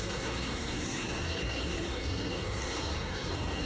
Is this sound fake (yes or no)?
yes